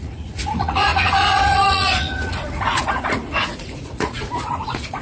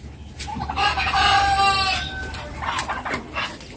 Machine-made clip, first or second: first